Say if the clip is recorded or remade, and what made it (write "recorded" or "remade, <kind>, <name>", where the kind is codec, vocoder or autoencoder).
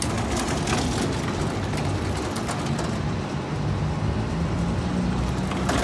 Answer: recorded